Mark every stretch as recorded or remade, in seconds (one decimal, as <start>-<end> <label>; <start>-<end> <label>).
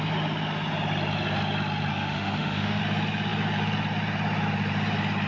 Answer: 0.0-1.9 recorded; 1.9-2.8 remade; 2.8-5.3 recorded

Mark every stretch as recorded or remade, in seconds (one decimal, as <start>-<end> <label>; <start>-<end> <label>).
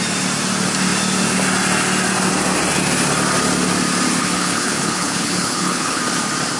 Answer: 0.0-4.2 recorded; 4.2-6.0 remade; 6.0-6.6 recorded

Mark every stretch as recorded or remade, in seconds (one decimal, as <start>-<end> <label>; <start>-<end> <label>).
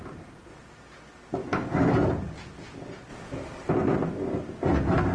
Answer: 0.0-1.4 recorded; 1.4-1.9 remade; 1.9-5.1 recorded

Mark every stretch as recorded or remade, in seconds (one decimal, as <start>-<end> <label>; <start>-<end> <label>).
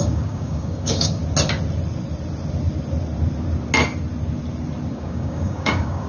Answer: 0.0-1.2 remade; 1.2-4.9 recorded; 4.9-6.1 remade